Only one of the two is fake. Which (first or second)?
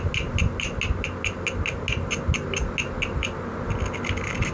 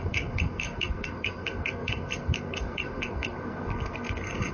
second